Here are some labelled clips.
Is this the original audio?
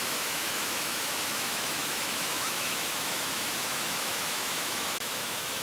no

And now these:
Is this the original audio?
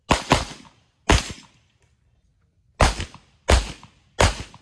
yes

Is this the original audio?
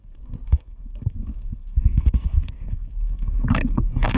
no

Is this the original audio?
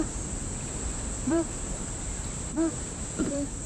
no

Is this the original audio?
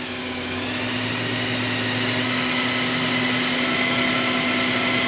yes